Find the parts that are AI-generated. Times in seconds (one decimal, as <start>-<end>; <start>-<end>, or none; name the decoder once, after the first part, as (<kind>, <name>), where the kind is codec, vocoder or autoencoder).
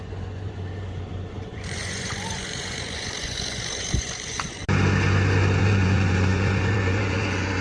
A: 0.0-4.6 (vocoder, Vocos); 5.6-7.6